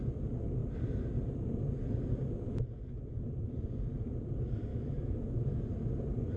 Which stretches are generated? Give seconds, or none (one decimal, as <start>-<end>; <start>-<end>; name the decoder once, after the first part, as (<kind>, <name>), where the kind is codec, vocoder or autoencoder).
4.7-5.6 (autoencoder, DAC-VAE)